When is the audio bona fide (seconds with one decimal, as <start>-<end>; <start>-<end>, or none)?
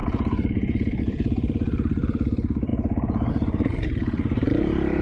2.7-3.3